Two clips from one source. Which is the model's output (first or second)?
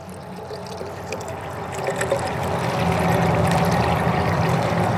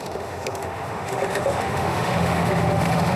second